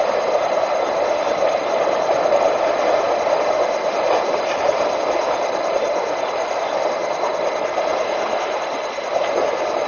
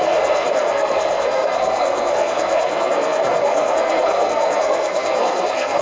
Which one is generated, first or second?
second